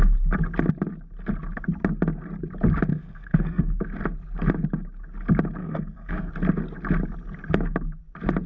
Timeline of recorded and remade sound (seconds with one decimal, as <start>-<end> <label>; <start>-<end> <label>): 0.0-2.9 recorded; 2.9-3.8 remade; 3.8-5.6 recorded; 5.6-6.3 remade; 6.3-8.5 recorded